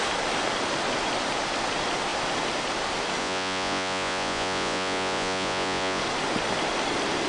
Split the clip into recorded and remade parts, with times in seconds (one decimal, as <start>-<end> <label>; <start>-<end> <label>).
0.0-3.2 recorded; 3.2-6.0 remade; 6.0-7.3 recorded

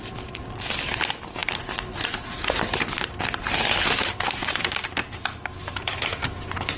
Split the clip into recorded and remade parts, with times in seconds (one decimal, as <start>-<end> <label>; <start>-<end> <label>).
0.0-5.3 recorded; 5.3-6.2 remade; 6.2-6.8 recorded

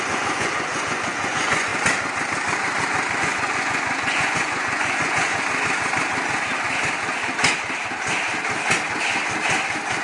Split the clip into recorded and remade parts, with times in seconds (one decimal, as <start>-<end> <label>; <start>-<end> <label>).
0.0-1.7 remade; 1.7-3.2 recorded; 3.2-5.3 remade; 5.3-10.0 recorded